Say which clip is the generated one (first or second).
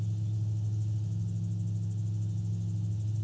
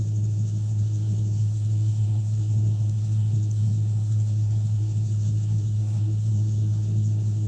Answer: second